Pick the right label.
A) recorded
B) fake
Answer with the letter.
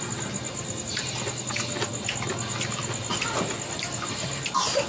A